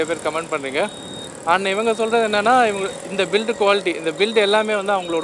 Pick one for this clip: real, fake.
real